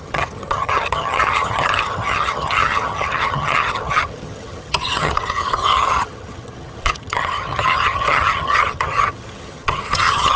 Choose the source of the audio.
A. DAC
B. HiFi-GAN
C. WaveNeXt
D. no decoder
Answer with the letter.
B